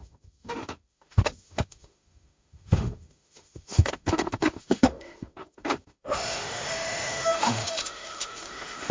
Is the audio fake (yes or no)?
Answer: yes